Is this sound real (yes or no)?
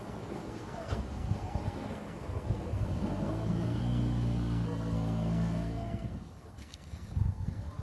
no